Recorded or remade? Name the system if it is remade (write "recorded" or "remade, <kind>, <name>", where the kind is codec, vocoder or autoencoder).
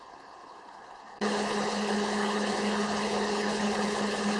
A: remade, codec, HILCodec